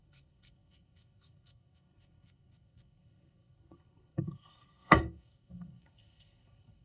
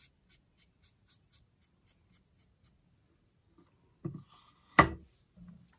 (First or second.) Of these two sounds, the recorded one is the second